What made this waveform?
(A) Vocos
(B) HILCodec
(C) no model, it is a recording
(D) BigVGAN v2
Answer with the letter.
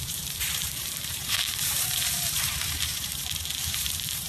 D